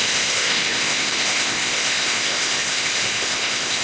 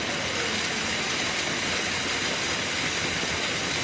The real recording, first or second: second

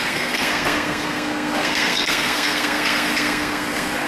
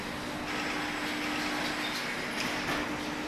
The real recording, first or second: second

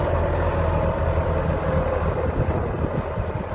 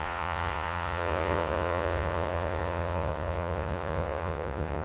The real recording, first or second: first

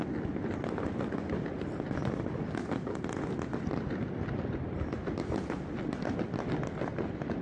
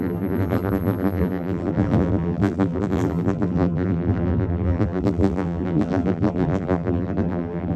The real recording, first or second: first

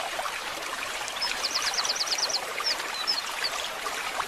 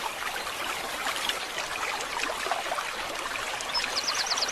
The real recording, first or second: second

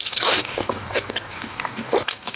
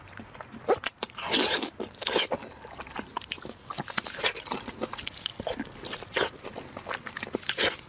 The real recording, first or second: second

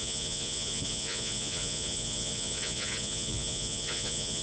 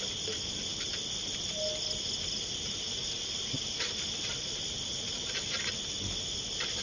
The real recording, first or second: second